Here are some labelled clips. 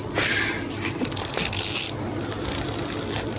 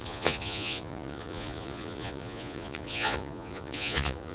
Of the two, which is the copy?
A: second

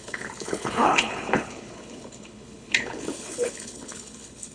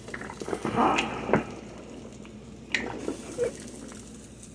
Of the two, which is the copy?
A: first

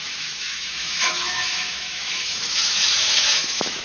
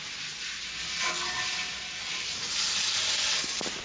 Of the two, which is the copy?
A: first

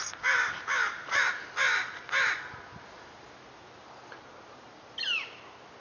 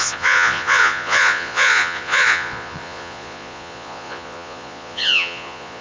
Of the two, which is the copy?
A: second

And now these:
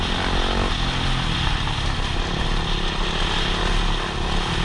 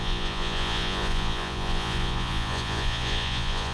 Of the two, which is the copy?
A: second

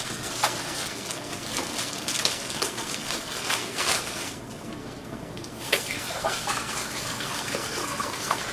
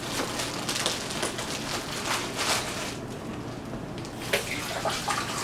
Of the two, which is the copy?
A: first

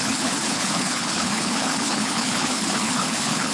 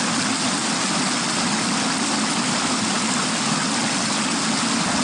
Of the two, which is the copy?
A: first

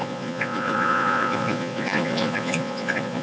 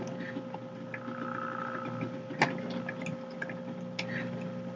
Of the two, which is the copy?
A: first